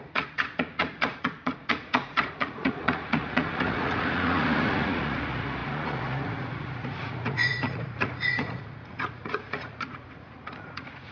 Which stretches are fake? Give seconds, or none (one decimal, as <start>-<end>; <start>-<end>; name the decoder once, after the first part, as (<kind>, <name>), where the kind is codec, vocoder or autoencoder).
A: 0.0-11.1 (vocoder, Vocos)